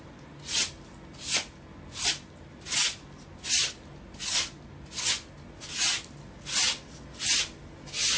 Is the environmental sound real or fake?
real